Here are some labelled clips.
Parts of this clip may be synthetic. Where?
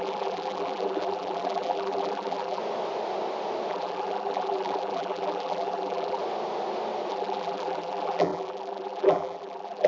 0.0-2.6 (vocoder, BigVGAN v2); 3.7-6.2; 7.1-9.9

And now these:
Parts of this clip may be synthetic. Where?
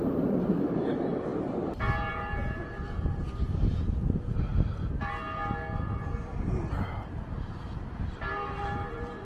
0.0-4.5 (vocoder, BigVGAN v2); 6.2-9.2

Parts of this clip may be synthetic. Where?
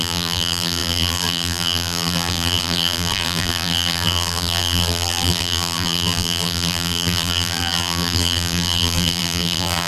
0.0-9.9 (vocoder, BigVGAN v2)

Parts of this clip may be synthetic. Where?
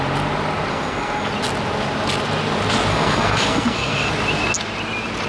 0.7-1.3 (codec, SNAC); 2.9-4.1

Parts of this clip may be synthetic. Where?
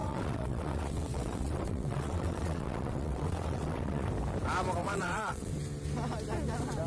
0.0-4.1 (vocoder, WaveNeXt); 4.8-5.5